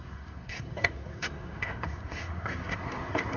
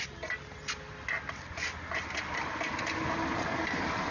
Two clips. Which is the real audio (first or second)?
second